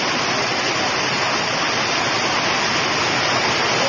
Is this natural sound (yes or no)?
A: yes